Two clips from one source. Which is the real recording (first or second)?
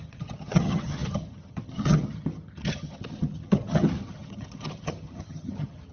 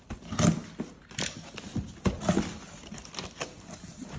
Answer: second